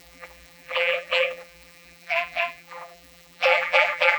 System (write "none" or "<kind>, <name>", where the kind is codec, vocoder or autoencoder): vocoder, BigVGAN v2